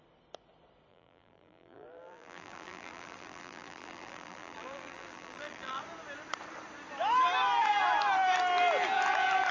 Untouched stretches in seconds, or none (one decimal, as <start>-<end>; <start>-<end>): 0.0-0.9; 5.8-9.5